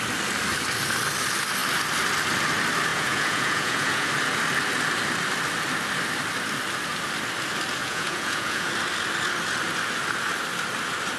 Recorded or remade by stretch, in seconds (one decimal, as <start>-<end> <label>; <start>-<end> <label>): 0.0-2.9 recorded; 2.9-4.1 remade; 4.1-7.8 recorded; 7.8-8.7 remade; 8.7-11.2 recorded